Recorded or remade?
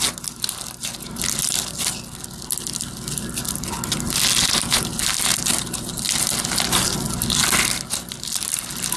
recorded